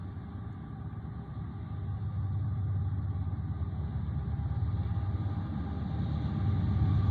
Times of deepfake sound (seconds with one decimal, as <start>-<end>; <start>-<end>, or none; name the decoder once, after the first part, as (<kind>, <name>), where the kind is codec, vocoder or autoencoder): none